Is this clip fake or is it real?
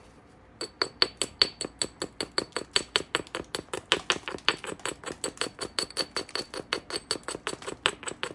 real